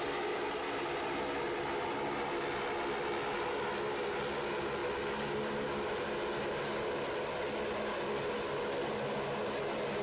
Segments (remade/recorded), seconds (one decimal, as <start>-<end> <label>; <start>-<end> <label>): 0.0-10.0 recorded